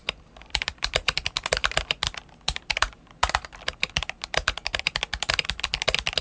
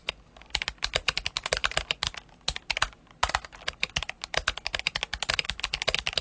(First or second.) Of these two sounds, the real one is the second